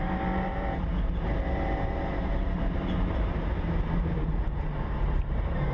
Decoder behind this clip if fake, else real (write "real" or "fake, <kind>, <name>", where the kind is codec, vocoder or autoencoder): fake, vocoder, BigVGAN v2